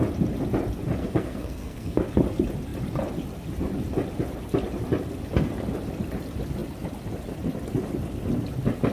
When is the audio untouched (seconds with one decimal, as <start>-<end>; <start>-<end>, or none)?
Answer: 0.0-1.0; 2.1-8.9